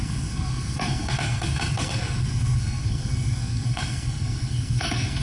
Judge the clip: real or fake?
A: fake